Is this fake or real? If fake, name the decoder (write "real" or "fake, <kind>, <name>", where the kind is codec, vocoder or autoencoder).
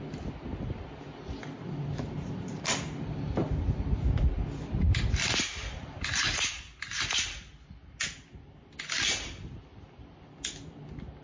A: real